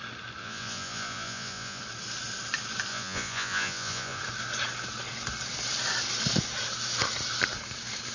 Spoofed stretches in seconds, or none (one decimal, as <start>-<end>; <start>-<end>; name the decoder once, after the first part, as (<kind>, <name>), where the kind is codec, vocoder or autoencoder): 0.4-1.8 (vocoder, Vocos); 2.9-4.2